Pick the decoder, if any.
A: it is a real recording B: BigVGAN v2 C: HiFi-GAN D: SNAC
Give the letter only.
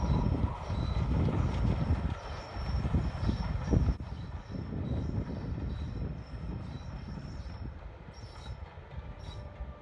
A